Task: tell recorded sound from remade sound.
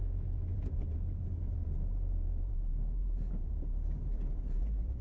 remade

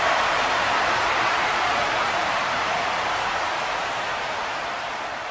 remade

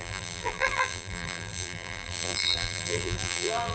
remade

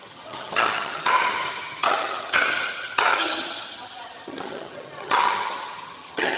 remade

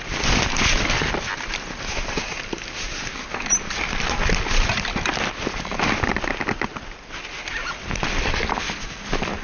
recorded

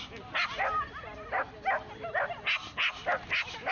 recorded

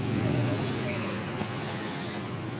remade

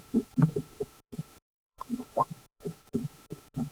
remade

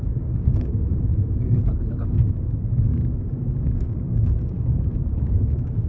remade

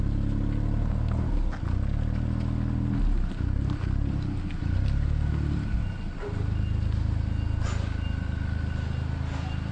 recorded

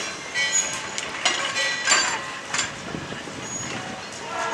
recorded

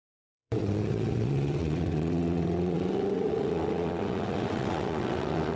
remade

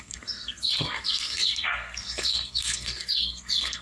remade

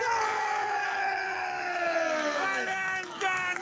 remade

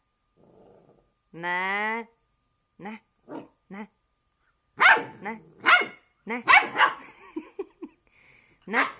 recorded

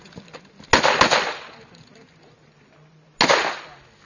recorded